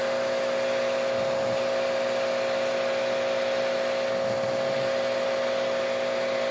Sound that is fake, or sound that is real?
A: real